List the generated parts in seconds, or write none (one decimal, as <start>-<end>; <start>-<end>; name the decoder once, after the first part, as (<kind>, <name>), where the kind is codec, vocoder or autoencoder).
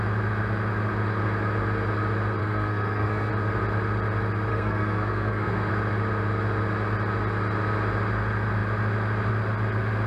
2.4-3.3 (codec, SNAC); 4.5-5.7